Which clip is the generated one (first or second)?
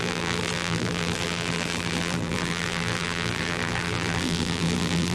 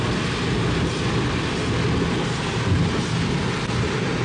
first